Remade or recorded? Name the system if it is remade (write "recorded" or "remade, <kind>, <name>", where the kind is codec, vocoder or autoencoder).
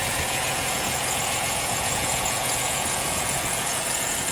remade, vocoder, Vocos